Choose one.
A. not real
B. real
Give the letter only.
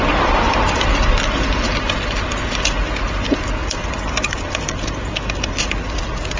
A